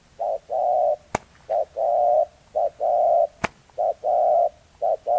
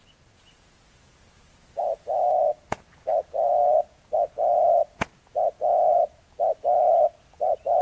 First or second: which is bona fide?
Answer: first